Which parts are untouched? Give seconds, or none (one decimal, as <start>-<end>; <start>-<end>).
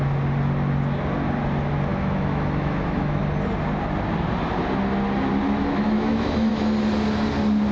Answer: 0.0-1.9; 3.2-5.6; 6.5-7.7